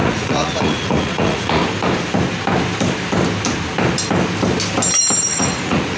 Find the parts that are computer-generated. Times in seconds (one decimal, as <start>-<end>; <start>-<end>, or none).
0.0-1.6; 5.2-6.0